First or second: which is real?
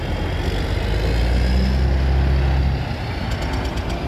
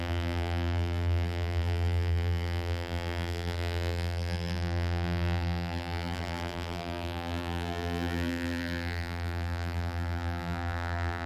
first